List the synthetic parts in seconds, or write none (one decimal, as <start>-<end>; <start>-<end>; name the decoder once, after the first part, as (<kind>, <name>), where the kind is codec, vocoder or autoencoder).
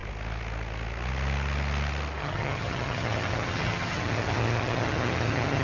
2.2-5.6 (vocoder, HiFi-GAN)